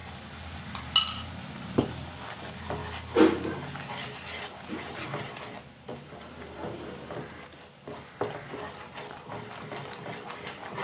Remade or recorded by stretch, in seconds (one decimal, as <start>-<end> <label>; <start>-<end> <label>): 0.0-5.9 recorded; 5.9-7.4 remade; 7.4-10.8 recorded

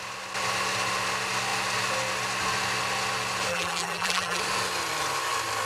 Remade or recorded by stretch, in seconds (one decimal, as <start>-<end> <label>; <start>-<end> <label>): 0.0-3.5 recorded; 3.5-4.4 remade; 4.4-5.7 recorded

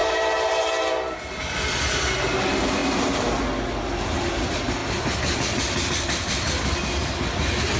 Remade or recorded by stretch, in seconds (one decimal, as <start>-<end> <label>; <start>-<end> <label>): 0.0-7.8 recorded

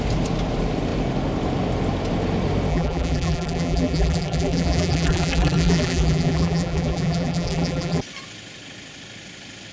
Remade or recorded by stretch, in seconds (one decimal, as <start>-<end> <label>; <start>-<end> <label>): 0.0-2.7 recorded; 2.7-8.0 remade; 8.0-9.7 recorded

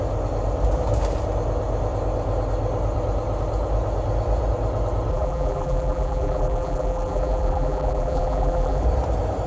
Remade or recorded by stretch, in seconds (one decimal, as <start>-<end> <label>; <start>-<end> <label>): 0.0-5.1 recorded; 5.1-8.8 remade; 8.8-9.5 recorded

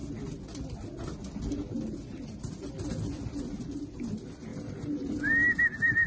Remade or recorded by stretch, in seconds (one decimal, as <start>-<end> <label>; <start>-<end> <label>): 0.0-4.5 recorded; 4.5-5.2 remade; 5.2-6.1 recorded